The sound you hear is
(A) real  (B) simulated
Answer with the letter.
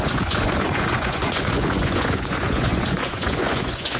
B